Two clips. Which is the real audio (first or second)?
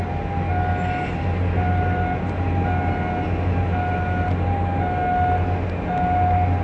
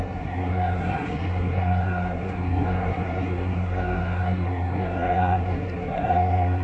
first